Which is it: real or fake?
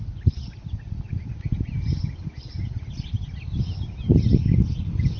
real